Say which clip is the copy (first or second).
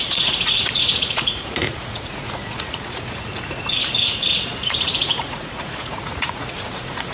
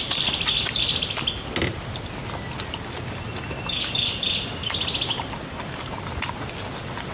first